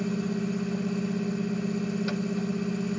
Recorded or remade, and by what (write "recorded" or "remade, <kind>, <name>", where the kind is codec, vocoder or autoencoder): recorded